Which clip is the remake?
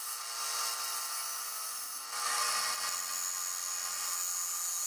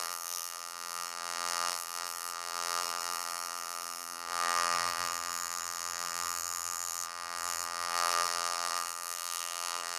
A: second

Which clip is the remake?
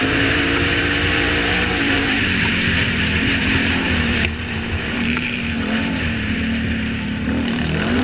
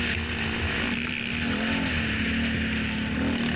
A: first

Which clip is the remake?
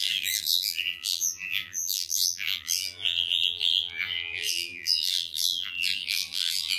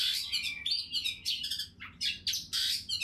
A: first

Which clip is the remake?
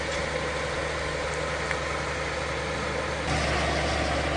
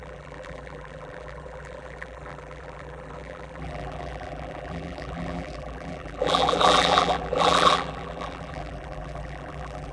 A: second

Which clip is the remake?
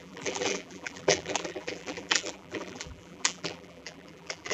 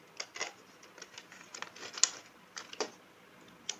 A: first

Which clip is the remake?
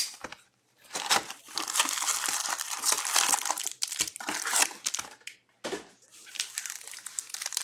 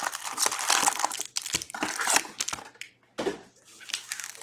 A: first